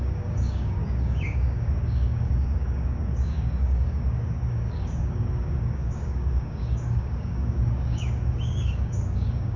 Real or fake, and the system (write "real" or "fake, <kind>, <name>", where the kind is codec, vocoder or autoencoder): fake, codec, DAC